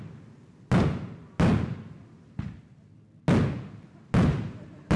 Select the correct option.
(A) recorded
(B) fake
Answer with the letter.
A